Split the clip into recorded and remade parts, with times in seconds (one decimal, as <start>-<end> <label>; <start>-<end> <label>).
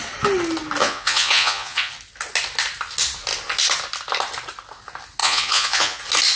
0.0-0.8 recorded; 0.8-1.9 remade; 1.9-5.2 recorded; 5.2-6.0 remade; 6.0-6.4 recorded